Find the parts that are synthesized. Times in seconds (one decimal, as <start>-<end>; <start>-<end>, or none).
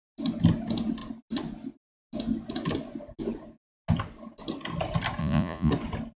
5.2-5.7